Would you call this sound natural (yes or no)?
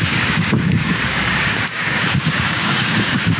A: no